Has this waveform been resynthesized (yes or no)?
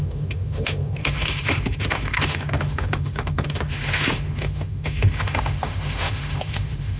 yes